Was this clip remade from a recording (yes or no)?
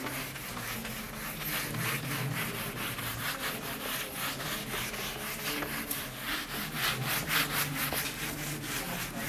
no